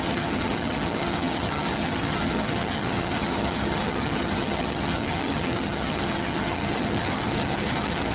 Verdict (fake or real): fake